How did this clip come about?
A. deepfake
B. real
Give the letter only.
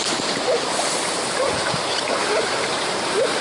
A